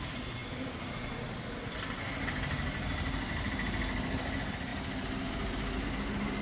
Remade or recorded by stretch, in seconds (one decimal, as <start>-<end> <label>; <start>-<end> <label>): 0.0-4.7 recorded; 4.7-6.4 remade